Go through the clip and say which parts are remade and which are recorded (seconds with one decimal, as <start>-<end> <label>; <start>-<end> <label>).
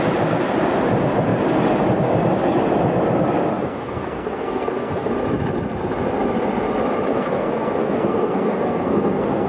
0.0-3.6 recorded; 3.6-5.1 remade; 5.1-7.1 recorded; 7.1-9.5 remade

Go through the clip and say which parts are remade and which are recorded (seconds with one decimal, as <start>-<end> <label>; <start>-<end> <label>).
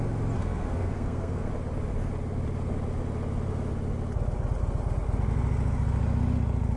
0.0-0.4 recorded; 0.4-1.5 remade; 1.5-6.8 recorded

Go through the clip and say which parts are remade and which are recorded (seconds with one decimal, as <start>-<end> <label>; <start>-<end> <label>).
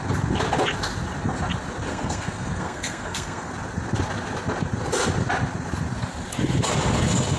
0.0-1.9 recorded; 1.9-3.5 remade; 3.5-7.4 recorded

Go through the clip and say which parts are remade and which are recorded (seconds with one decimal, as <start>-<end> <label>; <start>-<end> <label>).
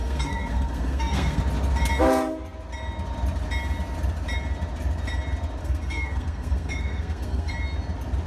0.0-1.4 remade; 1.4-5.6 recorded; 5.6-7.5 remade; 7.5-8.3 recorded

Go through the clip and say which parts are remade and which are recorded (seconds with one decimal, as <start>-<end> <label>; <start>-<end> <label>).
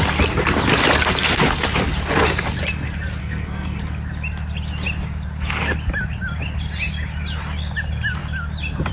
0.0-3.2 recorded; 3.2-3.8 remade; 3.8-8.9 recorded